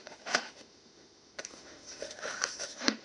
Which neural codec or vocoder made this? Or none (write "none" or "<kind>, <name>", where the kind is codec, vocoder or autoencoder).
autoencoder, DAC-VAE